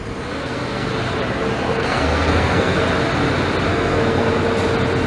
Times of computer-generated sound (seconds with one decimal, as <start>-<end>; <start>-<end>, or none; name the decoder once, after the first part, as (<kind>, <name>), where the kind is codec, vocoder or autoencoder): 0.4-0.9 (codec, SNAC); 1.7-2.8; 3.7-4.3